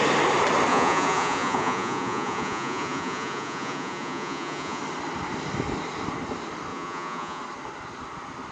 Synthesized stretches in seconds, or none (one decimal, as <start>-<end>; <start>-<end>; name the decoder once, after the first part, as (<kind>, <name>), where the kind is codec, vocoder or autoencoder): 0.7-4.8 (vocoder, Vocos); 6.7-7.4